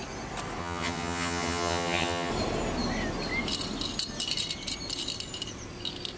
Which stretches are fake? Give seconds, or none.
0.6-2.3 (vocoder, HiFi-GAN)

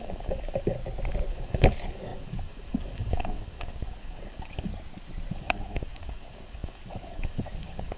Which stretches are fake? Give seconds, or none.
0.0-0.8 (codec, DAC); 1.3-4.7; 5.3-8.0

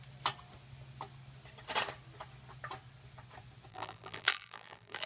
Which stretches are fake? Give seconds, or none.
3.7-5.1 (vocoder, BigVGAN v2)

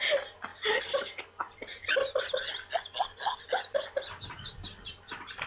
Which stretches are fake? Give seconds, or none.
0.0-2.3 (vocoder, BigVGAN v2); 3.0-5.5

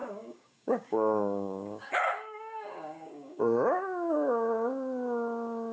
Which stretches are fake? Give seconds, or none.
0.0-3.4 (codec, DAC)

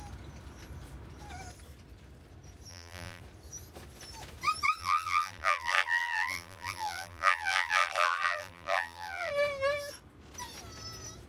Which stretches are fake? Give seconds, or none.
2.7-3.2 (vocoder, BigVGAN v2); 4.8-9.3

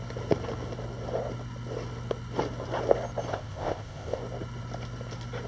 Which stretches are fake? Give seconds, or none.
3.3-4.2 (codec, ZipCodec)

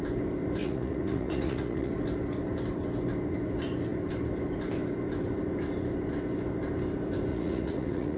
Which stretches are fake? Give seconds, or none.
0.6-1.9 (vocoder, Vocos); 7.3-8.2